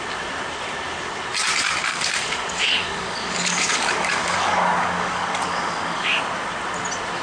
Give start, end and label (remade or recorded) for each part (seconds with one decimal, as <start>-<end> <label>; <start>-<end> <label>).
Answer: 0.0-1.9 recorded; 1.9-6.2 remade; 6.2-7.2 recorded